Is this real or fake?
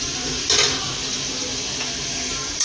real